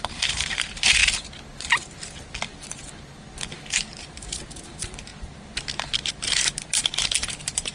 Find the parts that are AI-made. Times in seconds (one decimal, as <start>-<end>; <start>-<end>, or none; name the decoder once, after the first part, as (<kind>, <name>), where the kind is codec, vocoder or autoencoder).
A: 0.0-1.0 (vocoder, BigVGAN v2); 3.4-5.1; 5.8-7.7